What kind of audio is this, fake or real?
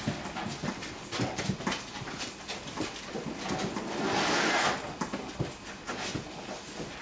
real